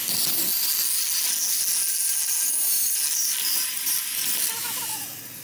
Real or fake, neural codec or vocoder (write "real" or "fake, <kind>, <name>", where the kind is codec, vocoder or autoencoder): real